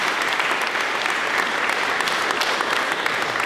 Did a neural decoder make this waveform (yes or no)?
no